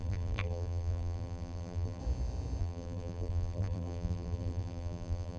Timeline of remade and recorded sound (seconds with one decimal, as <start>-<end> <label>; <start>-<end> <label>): 0.0-2.0 remade; 2.0-2.6 recorded; 2.6-5.4 remade